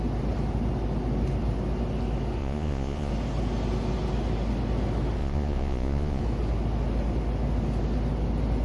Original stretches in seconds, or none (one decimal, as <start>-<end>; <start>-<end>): 0.0-2.4; 3.1-5.2; 6.2-8.6